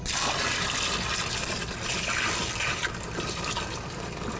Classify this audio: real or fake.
real